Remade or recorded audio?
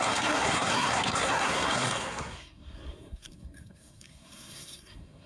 remade